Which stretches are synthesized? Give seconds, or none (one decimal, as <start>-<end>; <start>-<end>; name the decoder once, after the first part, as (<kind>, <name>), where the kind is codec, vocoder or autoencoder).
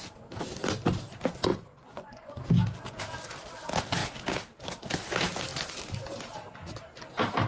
1.5-2.4 (vocoder, Vocos)